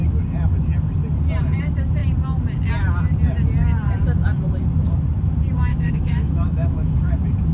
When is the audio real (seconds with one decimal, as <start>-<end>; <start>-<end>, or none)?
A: 0.0-5.7; 7.1-7.5